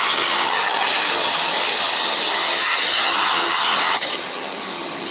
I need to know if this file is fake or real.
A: fake